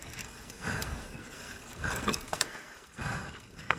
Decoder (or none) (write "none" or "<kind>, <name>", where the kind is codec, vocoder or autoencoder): codec, SNAC